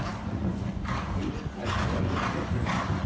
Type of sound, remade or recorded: remade